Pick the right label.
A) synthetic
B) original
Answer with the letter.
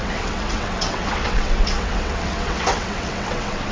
A